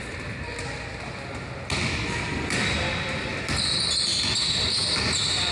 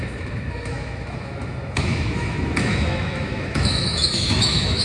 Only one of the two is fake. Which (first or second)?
second